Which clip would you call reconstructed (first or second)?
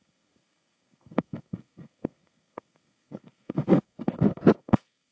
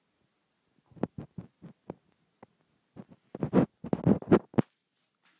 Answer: first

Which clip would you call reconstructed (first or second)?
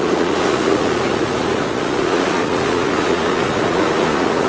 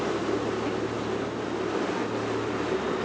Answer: first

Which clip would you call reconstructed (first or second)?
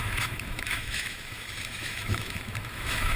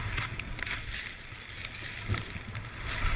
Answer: first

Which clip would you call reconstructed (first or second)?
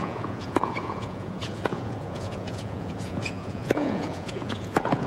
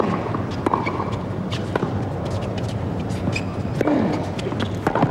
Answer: first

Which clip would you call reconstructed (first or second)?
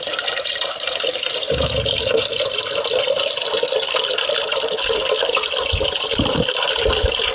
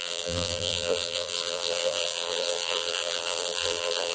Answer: second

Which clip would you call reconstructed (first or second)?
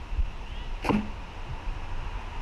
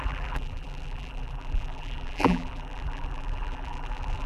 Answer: second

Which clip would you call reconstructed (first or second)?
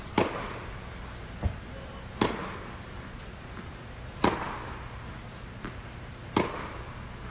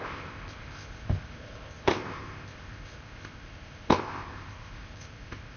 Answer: second